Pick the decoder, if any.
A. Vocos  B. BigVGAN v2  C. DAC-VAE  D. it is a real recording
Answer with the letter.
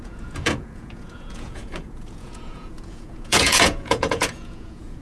A